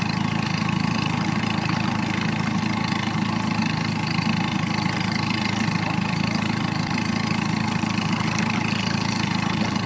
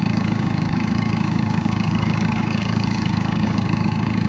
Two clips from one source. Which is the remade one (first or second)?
second